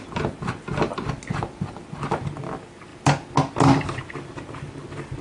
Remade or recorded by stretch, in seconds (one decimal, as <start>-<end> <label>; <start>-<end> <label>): 0.0-5.2 recorded